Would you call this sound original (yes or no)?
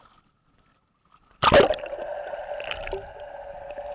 yes